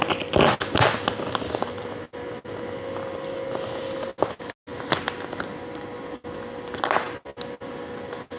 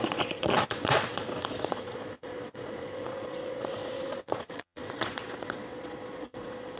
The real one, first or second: first